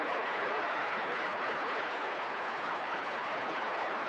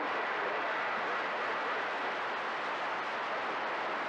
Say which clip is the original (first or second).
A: second